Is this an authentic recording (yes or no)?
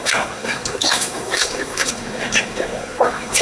no